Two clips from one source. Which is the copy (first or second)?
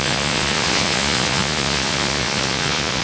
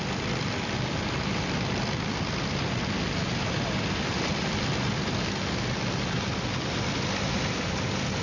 first